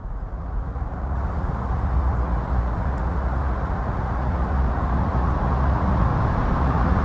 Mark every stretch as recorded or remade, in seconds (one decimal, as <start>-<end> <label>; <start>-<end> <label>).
0.0-6.1 remade; 6.1-6.6 recorded; 6.6-7.0 remade